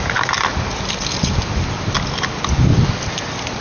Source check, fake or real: real